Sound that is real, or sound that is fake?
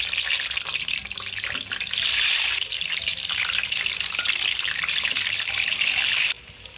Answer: real